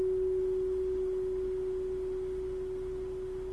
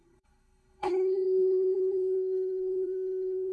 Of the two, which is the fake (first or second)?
second